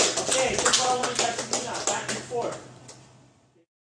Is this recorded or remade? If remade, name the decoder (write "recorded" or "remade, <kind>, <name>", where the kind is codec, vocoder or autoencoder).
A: recorded